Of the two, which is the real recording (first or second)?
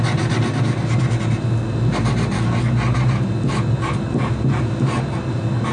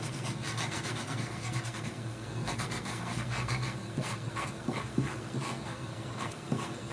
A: first